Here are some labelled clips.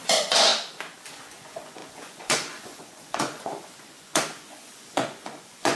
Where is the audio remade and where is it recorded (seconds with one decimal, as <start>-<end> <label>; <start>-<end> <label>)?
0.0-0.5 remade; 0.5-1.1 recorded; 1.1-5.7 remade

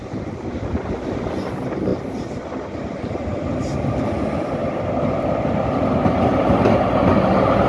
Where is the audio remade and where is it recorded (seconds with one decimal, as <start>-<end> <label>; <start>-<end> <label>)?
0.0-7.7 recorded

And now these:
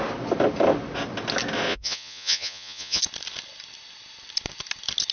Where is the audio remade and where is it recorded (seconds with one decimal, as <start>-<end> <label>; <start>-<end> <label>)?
0.0-1.7 recorded; 1.7-3.0 remade; 3.0-5.1 recorded

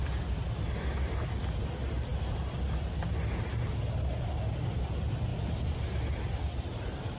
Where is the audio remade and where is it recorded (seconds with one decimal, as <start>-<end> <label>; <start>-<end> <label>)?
0.0-7.2 recorded

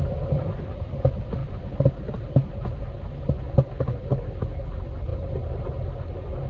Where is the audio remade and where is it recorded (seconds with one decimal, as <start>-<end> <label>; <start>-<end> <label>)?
0.0-6.5 recorded